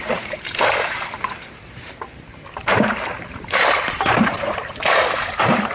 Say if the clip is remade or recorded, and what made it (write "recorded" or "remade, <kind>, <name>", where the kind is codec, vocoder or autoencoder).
remade, vocoder, BigVGAN v2